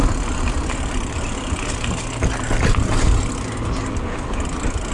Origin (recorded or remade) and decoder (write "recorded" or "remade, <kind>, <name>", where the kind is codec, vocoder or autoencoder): recorded